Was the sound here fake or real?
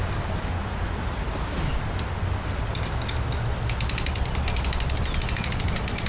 real